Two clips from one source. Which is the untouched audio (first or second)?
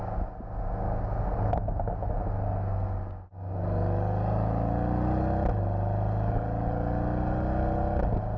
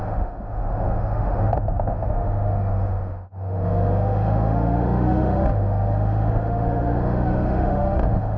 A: first